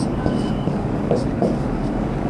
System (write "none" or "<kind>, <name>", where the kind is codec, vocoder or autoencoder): codec, DAC